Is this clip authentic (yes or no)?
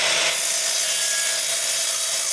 yes